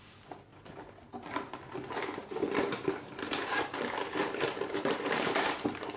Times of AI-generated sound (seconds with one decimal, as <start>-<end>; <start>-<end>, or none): 2.2-6.0